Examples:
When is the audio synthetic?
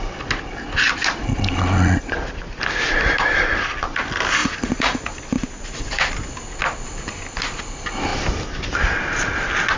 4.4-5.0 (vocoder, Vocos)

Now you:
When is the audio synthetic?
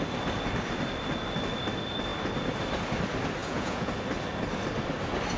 3.4-3.9 (vocoder, Vocos)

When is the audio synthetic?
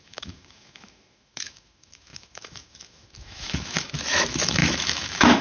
0.0-5.4 (autoencoder, DAC-VAE)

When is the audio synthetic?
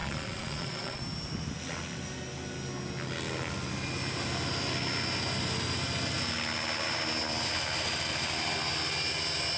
0.0-1.0 (vocoder, Vocos)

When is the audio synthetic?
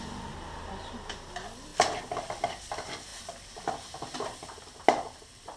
0.4-1.1 (vocoder, BigVGAN v2)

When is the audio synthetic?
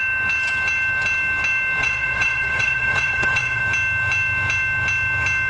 1.8-3.6 (vocoder, Vocos)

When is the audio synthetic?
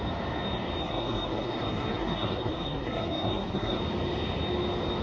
0.8-3.8 (codec, SNAC)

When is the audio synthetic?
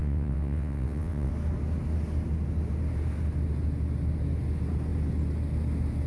0.0-1.3 (vocoder, WaveNeXt)